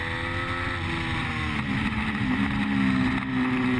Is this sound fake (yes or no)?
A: no